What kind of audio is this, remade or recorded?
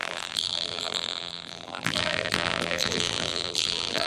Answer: remade